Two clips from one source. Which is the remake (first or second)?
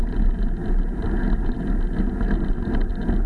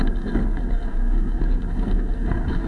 second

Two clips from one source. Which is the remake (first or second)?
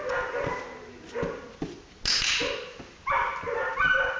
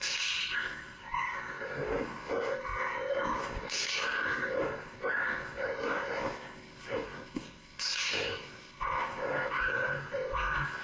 second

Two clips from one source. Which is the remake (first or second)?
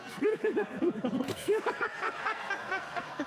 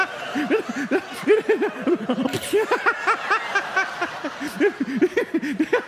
first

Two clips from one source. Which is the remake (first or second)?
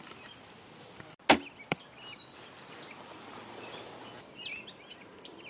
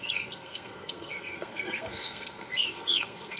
second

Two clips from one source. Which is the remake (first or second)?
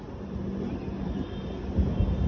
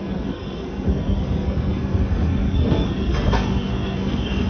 second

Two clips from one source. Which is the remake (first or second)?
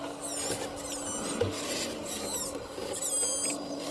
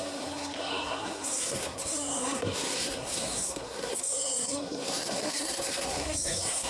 second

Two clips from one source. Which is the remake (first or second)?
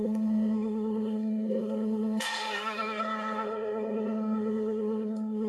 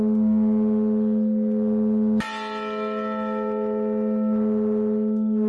first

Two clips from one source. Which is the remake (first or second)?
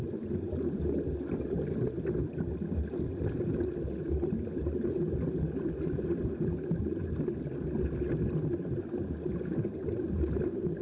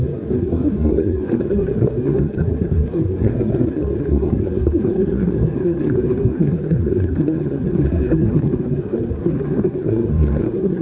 second